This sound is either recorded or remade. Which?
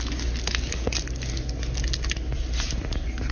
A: recorded